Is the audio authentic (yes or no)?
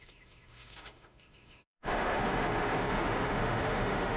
no